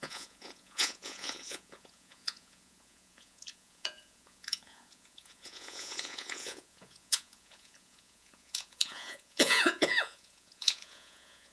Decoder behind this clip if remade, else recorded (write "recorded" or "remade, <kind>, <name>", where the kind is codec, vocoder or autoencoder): remade, vocoder, Vocos